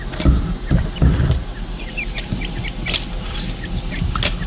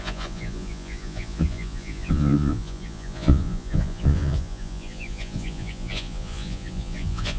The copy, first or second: second